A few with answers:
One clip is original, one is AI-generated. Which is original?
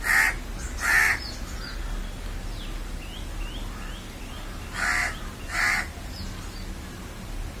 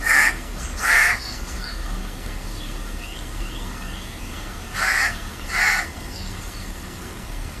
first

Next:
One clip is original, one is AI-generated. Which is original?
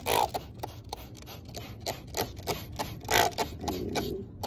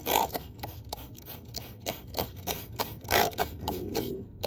first